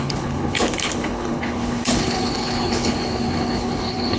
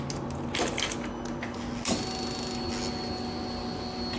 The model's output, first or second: first